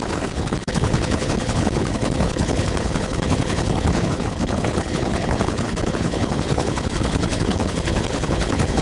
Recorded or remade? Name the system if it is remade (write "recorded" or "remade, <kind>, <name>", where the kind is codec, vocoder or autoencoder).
remade, codec, HILCodec